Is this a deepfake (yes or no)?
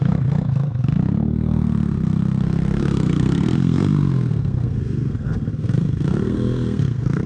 yes